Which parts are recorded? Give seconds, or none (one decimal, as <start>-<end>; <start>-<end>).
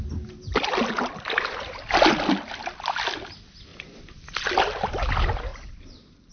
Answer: 0.0-6.3